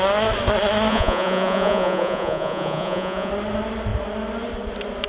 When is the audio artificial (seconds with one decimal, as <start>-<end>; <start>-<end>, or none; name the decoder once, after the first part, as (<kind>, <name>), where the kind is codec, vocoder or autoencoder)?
0.9-3.3 (vocoder, Vocos)